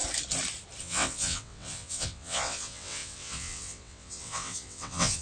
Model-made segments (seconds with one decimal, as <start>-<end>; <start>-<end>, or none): 0.8-5.2